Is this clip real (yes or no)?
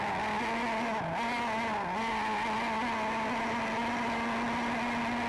yes